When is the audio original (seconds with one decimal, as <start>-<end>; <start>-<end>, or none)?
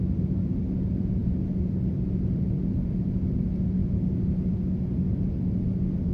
0.0-6.1